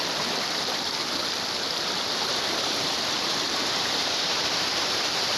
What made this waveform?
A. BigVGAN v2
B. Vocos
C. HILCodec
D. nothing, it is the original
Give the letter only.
A